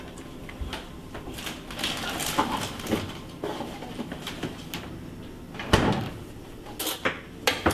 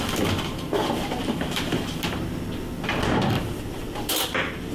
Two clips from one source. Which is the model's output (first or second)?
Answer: second